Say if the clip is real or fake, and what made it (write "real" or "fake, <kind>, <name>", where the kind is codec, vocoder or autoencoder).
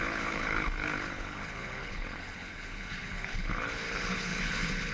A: fake, codec, HILCodec